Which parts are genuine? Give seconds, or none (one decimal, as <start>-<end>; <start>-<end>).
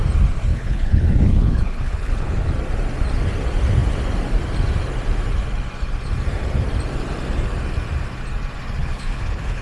0.0-0.5; 2.5-8.8